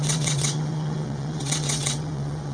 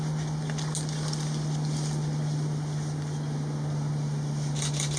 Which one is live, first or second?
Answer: second